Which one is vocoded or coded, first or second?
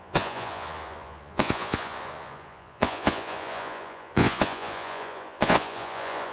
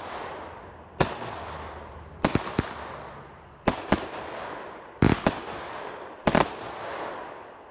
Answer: first